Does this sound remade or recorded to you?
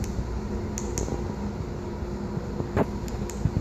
recorded